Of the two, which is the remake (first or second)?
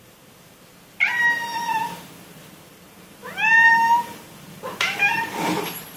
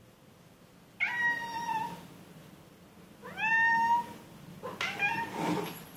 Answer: first